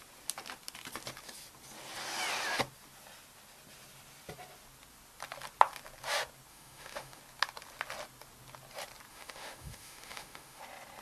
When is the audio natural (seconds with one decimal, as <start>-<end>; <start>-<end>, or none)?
0.0-6.5; 7.2-9.1; 10.6-11.0